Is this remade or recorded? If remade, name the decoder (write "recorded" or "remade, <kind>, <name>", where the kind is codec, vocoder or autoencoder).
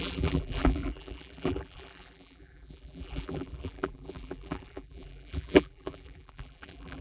remade, vocoder, BigVGAN v2